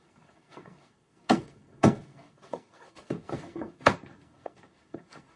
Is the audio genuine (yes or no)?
no